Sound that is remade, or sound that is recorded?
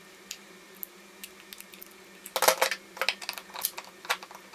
recorded